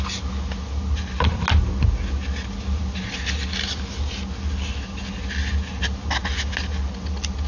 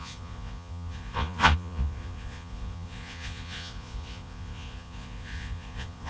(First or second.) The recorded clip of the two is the first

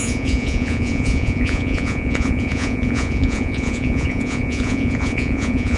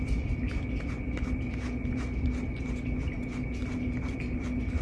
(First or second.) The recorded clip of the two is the second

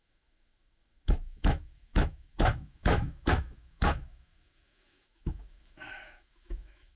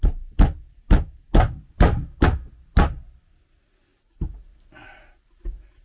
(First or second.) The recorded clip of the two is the second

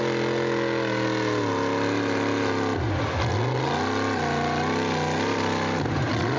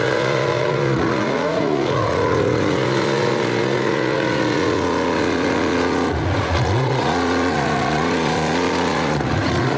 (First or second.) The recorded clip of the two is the first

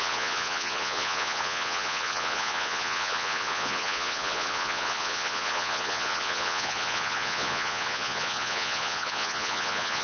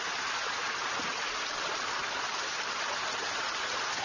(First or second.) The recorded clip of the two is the second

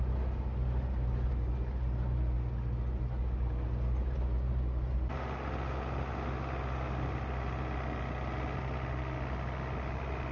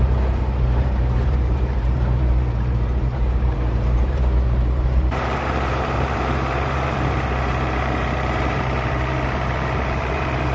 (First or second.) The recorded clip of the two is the first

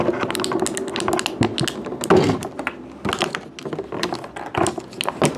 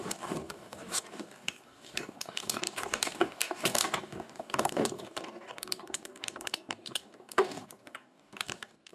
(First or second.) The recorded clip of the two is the first